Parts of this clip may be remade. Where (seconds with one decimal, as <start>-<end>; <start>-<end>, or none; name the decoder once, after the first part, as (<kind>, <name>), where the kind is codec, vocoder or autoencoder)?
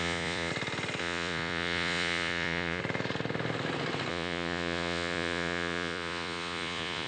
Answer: 0.0-0.5 (vocoder, Vocos); 1.0-2.8; 4.1-7.1